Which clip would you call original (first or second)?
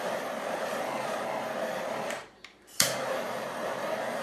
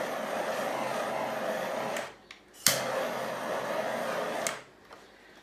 second